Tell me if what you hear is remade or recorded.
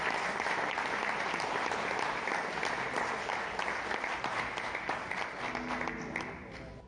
recorded